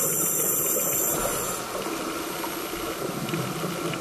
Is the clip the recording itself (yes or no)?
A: yes